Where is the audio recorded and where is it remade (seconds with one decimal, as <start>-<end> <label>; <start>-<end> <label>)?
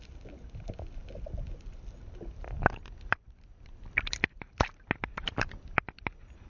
0.0-6.5 recorded